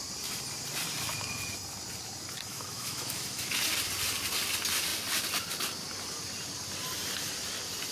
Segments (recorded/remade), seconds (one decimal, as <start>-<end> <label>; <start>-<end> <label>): 0.0-2.5 recorded; 2.5-3.6 remade; 3.6-7.9 recorded